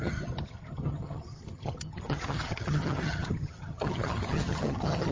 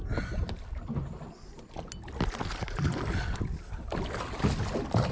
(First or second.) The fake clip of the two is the first